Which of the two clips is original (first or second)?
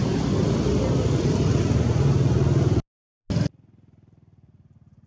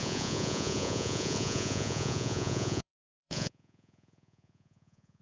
first